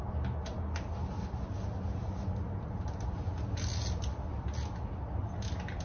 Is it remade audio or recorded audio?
recorded